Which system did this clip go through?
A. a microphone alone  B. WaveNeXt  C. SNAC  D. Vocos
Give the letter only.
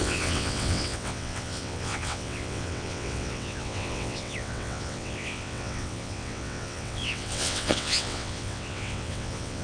B